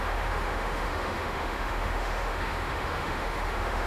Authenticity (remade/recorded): remade